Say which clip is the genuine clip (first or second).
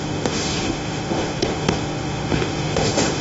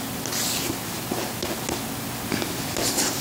second